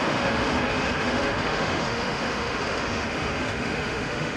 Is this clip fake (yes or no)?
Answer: yes